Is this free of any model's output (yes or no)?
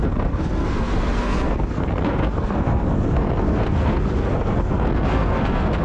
no